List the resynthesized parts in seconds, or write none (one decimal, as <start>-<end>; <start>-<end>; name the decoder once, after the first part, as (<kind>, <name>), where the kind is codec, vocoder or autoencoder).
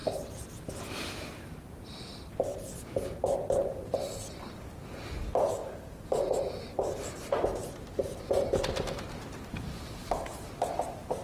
1.0-4.0 (vocoder, BigVGAN v2); 4.8-11.2